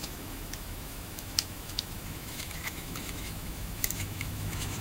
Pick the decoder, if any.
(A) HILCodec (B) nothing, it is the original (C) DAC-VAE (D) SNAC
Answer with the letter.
C